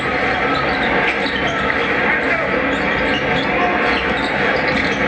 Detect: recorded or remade recorded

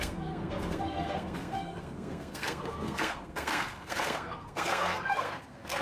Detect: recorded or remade remade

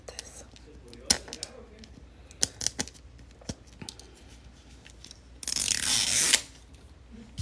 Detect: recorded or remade recorded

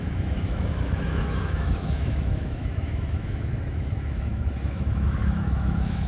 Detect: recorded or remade remade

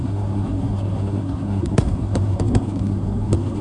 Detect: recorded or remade remade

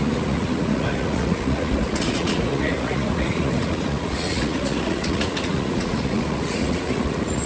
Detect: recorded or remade remade